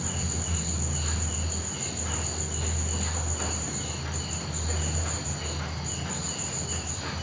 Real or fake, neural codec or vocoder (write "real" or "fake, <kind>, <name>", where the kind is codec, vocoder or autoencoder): real